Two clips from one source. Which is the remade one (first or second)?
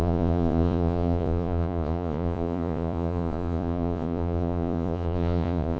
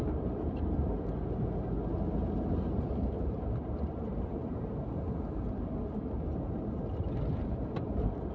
first